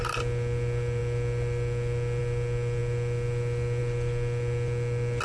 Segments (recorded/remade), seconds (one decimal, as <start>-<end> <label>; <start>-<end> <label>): 0.0-5.2 recorded